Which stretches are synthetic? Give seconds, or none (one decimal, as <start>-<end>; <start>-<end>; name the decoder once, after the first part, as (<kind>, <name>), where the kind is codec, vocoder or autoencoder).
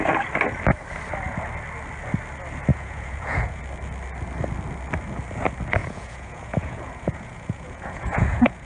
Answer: 2.7-3.6 (vocoder, Vocos); 5.8-8.7